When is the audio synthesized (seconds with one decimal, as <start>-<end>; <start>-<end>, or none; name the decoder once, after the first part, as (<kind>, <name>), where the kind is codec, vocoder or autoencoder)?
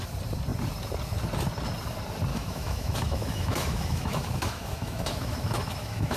2.3-6.2 (autoencoder, DAC-VAE)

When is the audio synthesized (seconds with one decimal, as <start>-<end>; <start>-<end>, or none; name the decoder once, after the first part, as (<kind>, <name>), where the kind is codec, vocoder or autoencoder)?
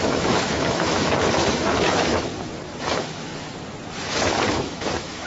0.0-2.3 (autoencoder, DAC-VAE); 2.8-3.3; 4.5-5.3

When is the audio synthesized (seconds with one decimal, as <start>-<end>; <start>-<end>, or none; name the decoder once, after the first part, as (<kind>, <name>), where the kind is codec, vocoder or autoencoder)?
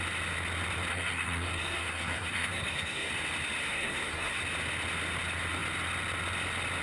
0.9-3.1 (codec, SNAC); 3.6-4.4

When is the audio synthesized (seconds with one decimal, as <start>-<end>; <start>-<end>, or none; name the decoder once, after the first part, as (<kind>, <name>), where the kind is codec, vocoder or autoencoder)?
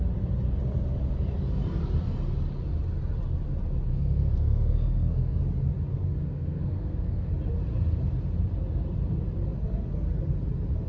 3.9-5.4 (codec, SNAC); 5.9-7.3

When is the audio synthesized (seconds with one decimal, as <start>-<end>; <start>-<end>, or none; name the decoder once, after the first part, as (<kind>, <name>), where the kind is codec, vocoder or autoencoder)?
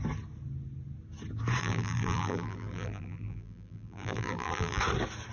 1.6-4.8 (vocoder, BigVGAN v2)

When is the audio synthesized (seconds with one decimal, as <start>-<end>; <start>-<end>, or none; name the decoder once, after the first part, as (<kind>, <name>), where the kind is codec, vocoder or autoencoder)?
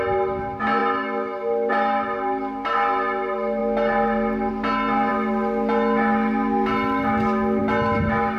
none